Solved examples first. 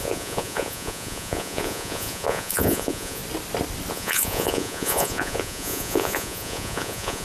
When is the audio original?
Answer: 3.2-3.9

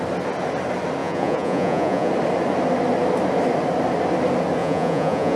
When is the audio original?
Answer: 0.0-1.0; 2.1-4.6

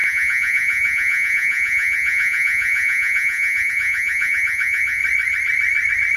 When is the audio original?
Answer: 5.0-6.2

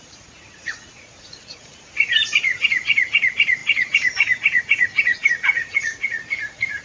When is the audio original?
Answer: none

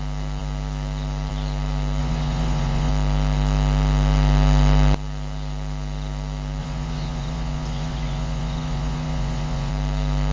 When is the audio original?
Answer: 0.0-2.0; 2.9-6.6; 9.7-10.3

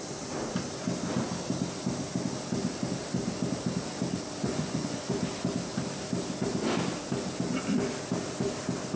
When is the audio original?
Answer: 0.0-4.4; 5.1-9.0

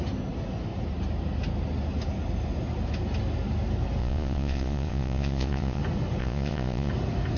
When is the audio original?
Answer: 0.0-4.0; 5.8-6.2; 6.9-7.4

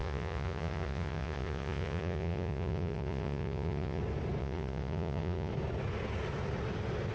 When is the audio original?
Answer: 4.0-4.4; 5.5-7.1